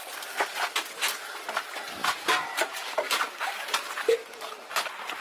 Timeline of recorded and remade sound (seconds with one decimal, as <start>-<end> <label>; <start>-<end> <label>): 0.0-2.0 recorded; 2.0-5.2 remade